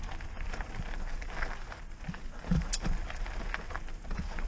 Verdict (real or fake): real